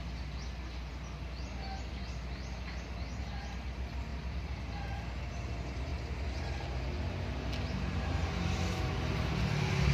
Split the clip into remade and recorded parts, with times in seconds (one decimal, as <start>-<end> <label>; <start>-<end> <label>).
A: 0.0-9.9 recorded

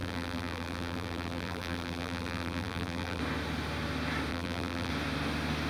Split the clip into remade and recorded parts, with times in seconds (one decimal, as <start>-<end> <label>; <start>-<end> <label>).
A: 0.0-3.2 remade; 3.2-4.3 recorded; 4.3-4.9 remade; 4.9-5.7 recorded

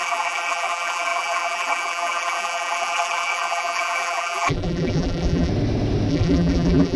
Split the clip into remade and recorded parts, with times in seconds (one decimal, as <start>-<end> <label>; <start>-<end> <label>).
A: 0.0-5.5 remade; 5.5-6.1 recorded; 6.1-7.0 remade

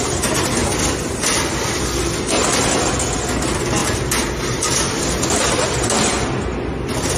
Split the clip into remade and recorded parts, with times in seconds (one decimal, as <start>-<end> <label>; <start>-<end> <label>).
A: 0.0-0.6 recorded; 0.6-1.8 remade; 1.8-7.2 recorded

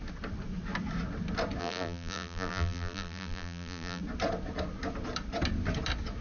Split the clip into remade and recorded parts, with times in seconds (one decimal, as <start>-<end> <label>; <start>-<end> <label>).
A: 0.0-1.6 recorded; 1.6-4.0 remade; 4.0-6.2 recorded

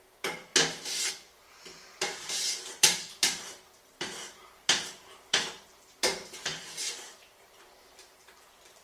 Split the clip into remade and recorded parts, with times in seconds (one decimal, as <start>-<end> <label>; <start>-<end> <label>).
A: 0.0-0.5 remade; 0.5-1.1 recorded; 1.1-8.8 remade

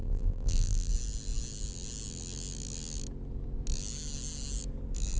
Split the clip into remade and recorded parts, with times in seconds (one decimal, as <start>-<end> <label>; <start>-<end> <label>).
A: 0.0-0.9 remade; 0.9-5.2 recorded